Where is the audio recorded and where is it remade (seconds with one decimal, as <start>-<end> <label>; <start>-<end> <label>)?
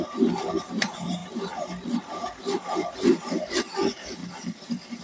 0.0-4.2 remade; 4.2-5.0 recorded